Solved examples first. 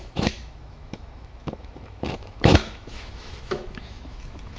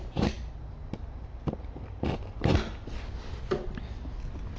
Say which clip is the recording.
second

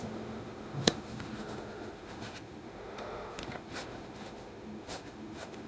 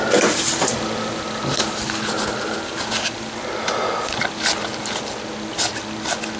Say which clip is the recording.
second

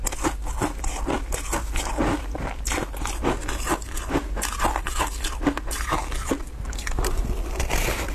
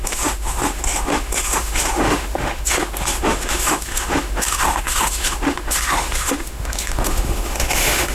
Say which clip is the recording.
first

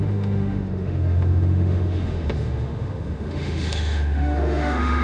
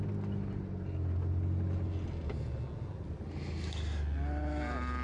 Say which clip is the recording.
second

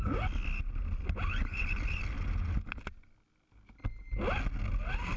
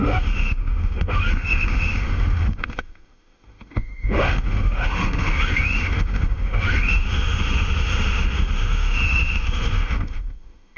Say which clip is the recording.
first